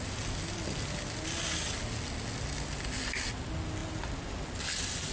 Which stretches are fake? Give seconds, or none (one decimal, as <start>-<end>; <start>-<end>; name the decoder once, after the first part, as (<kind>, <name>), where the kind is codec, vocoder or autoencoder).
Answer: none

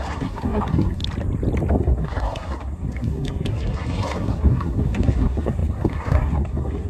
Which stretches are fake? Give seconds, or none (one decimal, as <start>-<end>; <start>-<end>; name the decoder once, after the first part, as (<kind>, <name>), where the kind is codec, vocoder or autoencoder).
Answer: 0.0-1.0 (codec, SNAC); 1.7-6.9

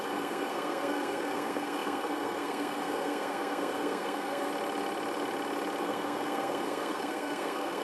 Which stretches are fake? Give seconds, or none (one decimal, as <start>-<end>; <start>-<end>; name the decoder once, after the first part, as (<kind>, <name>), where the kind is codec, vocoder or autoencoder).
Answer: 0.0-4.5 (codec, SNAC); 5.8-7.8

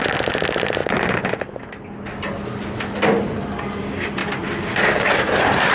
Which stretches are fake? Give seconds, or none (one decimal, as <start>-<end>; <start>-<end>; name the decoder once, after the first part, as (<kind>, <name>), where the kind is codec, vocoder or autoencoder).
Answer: 0.0-0.8 (vocoder, BigVGAN v2); 3.8-4.2

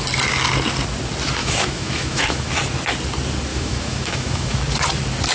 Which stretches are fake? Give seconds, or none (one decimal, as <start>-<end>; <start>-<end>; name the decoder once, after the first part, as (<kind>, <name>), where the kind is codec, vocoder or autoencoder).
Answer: 1.4-2.5 (autoencoder, DAC-VAE); 3.5-4.6